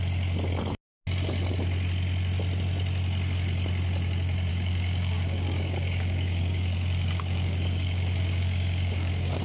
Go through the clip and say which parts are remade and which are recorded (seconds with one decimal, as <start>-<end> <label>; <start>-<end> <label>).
0.0-4.5 recorded; 4.5-9.4 remade

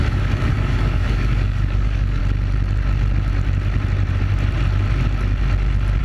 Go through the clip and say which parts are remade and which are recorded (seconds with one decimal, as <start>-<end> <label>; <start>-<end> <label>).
0.0-2.2 remade; 2.2-6.0 recorded

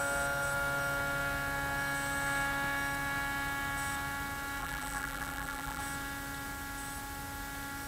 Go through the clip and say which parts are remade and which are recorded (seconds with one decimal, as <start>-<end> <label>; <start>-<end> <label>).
0.0-4.6 recorded; 4.6-5.8 remade; 5.8-7.9 recorded

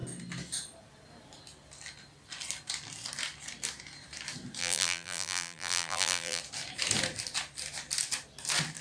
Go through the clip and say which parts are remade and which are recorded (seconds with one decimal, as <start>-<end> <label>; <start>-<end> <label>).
0.0-4.6 recorded; 4.6-6.4 remade; 6.4-8.8 recorded

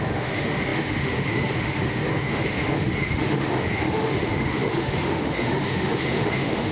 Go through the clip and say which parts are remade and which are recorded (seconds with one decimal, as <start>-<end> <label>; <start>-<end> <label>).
0.0-6.7 remade

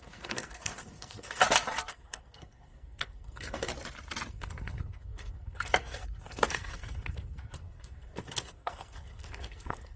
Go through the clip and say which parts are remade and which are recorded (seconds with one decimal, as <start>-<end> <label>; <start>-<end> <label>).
0.0-1.4 remade; 1.4-1.9 recorded; 1.9-3.7 remade; 3.7-4.3 recorded; 4.3-10.0 remade